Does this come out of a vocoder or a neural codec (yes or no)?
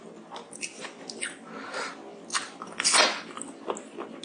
no